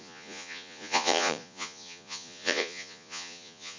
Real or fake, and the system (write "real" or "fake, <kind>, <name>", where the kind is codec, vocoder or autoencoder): fake, vocoder, Vocos